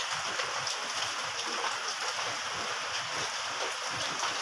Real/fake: real